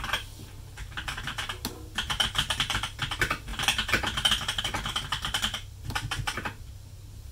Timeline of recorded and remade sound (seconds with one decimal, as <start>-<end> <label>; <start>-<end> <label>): 0.0-7.3 recorded